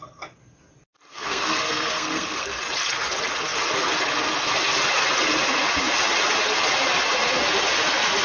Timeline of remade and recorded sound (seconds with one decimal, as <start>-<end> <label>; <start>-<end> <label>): 0.0-1.1 recorded; 1.1-2.6 remade; 2.6-8.2 recorded